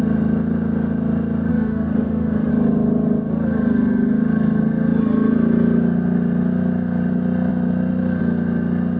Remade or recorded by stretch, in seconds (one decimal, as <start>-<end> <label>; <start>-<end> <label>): 0.0-1.5 recorded; 1.5-2.5 remade; 2.5-9.0 recorded

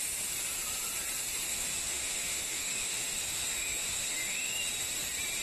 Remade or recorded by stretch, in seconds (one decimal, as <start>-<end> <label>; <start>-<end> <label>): 0.0-1.5 recorded; 1.5-4.7 remade; 4.7-5.4 recorded

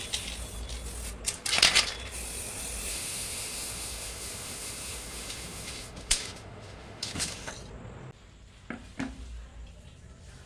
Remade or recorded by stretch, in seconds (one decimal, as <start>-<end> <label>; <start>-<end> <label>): 0.0-2.9 recorded; 2.9-7.5 remade; 7.5-10.5 recorded

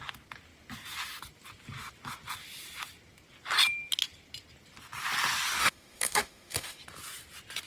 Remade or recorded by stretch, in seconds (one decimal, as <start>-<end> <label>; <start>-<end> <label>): 0.0-5.6 recorded; 5.6-6.8 remade; 6.8-7.7 recorded